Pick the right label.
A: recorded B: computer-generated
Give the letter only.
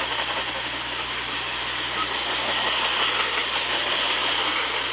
A